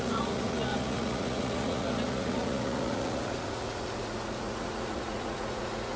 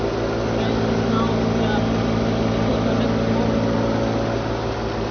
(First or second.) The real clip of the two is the second